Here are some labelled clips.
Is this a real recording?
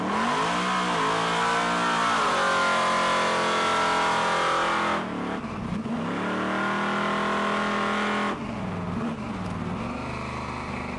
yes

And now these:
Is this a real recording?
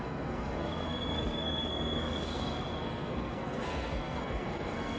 no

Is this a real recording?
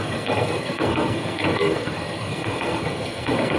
no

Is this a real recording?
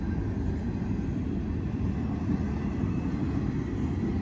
yes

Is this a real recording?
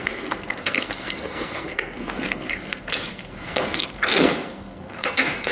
no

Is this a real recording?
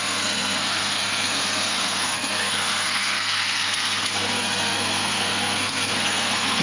no